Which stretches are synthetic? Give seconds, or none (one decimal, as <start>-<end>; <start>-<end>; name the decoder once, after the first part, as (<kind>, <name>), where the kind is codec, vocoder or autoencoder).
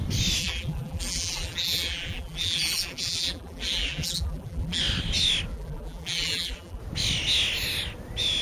0.4-4.8 (vocoder, BigVGAN v2); 5.5-6.8